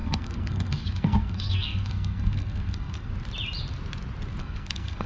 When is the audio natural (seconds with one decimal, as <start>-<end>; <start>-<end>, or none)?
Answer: 3.1-4.4